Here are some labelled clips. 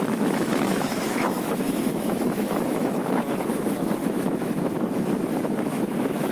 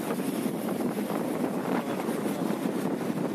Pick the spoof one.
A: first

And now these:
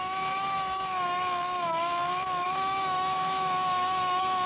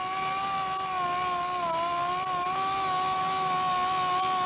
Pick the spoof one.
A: first